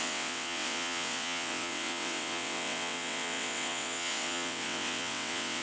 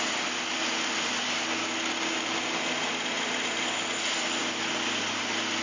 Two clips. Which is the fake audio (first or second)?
first